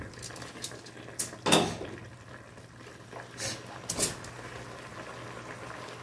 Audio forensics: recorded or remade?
recorded